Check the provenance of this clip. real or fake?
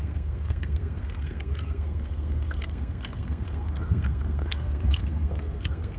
fake